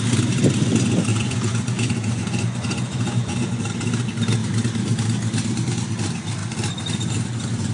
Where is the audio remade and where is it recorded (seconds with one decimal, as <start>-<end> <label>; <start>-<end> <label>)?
0.0-1.1 recorded; 1.1-3.6 remade; 3.6-7.7 recorded